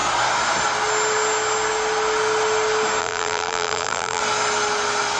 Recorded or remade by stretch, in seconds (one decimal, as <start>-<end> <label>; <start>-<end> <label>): 0.0-3.0 recorded; 3.0-4.2 remade; 4.2-5.2 recorded

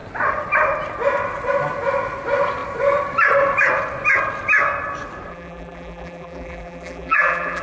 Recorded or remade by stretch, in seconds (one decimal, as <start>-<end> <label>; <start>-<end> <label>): 0.0-5.3 recorded; 5.3-7.6 remade

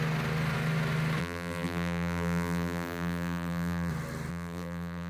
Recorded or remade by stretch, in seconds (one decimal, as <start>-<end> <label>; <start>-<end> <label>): 0.0-1.2 recorded; 1.2-3.9 remade; 3.9-4.3 recorded; 4.3-5.1 remade